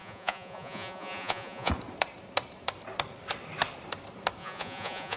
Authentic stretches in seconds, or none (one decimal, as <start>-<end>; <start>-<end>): 1.7-4.4

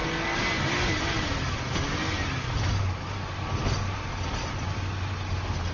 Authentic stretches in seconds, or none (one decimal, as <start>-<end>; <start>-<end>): 0.0-5.7

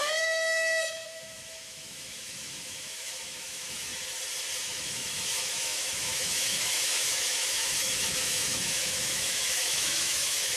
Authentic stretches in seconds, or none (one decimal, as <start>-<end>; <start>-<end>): 3.9-4.6